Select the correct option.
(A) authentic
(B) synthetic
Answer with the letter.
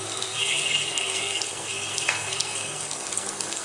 B